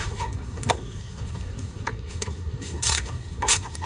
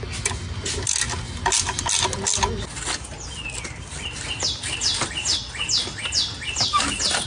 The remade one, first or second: first